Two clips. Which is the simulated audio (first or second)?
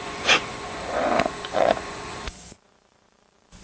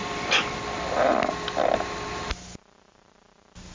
first